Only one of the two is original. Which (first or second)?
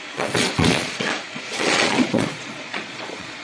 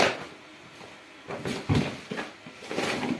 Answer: second